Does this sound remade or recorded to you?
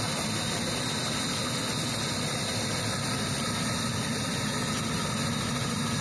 recorded